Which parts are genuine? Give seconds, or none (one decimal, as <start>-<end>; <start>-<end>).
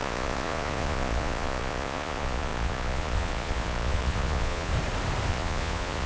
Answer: 4.7-5.3